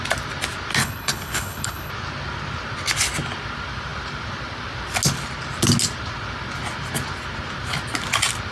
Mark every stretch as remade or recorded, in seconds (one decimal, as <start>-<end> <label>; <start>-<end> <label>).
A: 0.0-0.8 recorded; 0.8-1.9 remade; 1.9-8.5 recorded

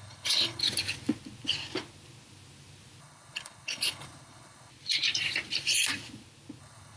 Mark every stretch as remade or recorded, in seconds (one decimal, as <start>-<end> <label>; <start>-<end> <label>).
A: 0.0-0.6 remade; 0.6-3.0 recorded; 3.0-4.7 remade; 4.7-6.6 recorded; 6.6-7.0 remade

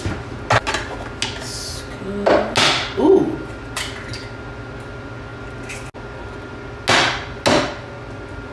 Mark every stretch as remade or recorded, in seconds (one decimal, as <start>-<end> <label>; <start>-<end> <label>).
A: 0.0-8.5 recorded

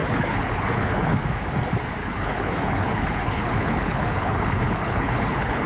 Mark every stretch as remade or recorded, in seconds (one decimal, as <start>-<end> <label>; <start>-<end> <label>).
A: 0.0-1.2 remade; 1.2-2.0 recorded; 2.0-5.7 remade

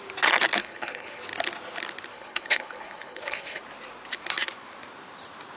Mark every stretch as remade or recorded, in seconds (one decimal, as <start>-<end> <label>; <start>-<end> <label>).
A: 0.0-0.6 recorded; 0.6-1.2 remade; 1.2-2.1 recorded; 2.1-3.6 remade; 3.6-5.6 recorded

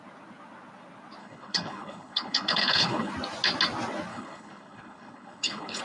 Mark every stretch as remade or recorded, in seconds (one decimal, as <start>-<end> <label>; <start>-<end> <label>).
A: 0.0-1.2 recorded; 1.2-3.1 remade; 3.1-4.1 recorded; 4.1-5.8 remade

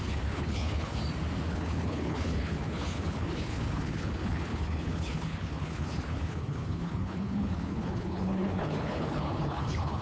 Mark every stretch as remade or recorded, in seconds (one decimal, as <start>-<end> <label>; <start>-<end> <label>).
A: 0.0-1.0 remade; 1.0-1.5 recorded; 1.5-10.0 remade

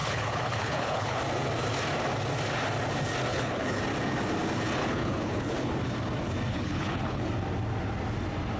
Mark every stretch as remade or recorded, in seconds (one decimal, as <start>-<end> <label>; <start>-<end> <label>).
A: 0.0-1.2 remade; 1.2-3.3 recorded; 3.3-3.8 remade; 3.8-4.8 recorded; 4.8-5.7 remade; 5.7-6.5 recorded; 6.5-7.3 remade; 7.3-8.6 recorded